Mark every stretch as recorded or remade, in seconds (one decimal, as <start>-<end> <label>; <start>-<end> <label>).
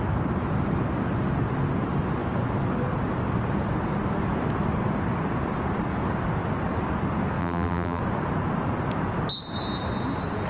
0.0-7.4 recorded; 7.4-8.0 remade; 8.0-10.5 recorded